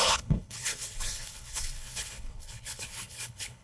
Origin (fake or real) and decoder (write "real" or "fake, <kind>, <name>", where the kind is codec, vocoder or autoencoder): fake, codec, HILCodec